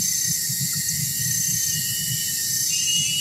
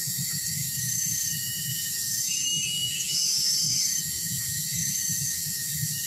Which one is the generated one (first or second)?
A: second